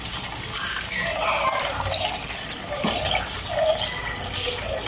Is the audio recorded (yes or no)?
yes